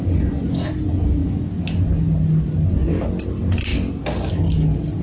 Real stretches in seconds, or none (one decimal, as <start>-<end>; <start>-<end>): 0.0-5.0